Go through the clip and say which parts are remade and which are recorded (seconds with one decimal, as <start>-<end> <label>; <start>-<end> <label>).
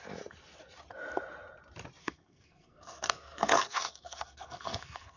0.0-2.0 recorded; 2.0-5.2 remade